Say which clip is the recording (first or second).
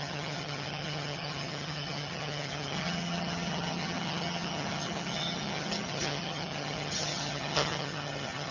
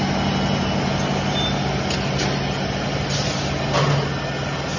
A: second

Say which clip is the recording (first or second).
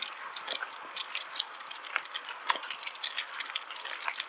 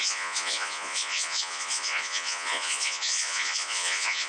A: first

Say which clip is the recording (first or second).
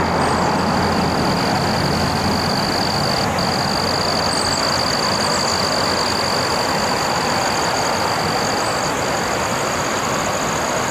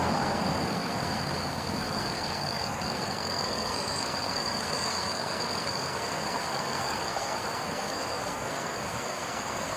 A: first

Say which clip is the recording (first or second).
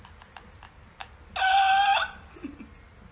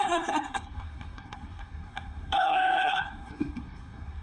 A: first